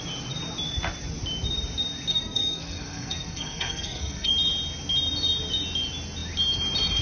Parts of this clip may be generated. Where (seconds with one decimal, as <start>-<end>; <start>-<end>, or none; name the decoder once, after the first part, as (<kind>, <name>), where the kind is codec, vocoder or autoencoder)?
2.1-4.3 (codec, SNAC)